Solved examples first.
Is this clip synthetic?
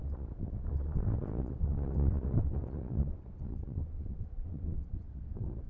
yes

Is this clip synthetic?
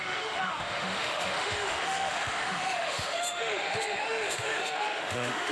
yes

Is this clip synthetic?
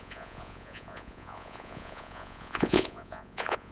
yes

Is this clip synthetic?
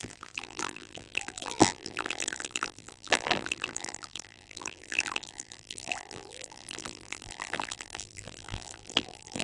yes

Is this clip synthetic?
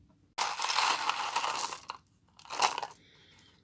no